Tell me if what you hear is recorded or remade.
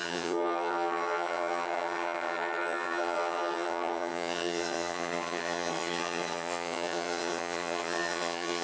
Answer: remade